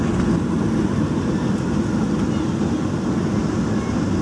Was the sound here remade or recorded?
recorded